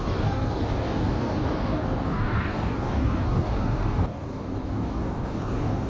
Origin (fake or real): fake